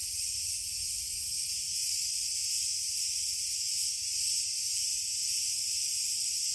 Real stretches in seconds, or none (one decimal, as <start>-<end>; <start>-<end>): 0.0-1.8; 3.6-4.9

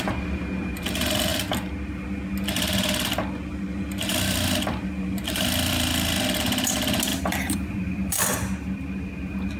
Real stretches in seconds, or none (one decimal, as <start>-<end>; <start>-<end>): 0.0-4.1; 5.7-7.1; 8.2-9.6

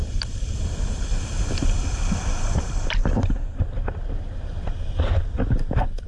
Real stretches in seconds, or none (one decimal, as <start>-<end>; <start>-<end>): 3.0-6.1

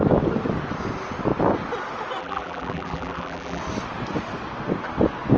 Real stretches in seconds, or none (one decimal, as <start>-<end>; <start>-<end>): 0.0-2.2; 3.6-5.4